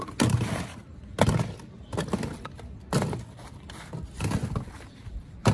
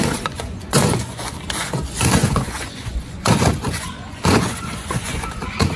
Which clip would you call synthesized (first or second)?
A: second